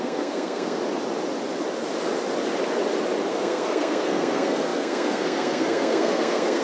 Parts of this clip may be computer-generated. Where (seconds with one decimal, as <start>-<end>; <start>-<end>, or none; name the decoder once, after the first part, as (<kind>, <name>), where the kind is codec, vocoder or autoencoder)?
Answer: 0.0-0.8 (codec, SNAC); 3.3-6.6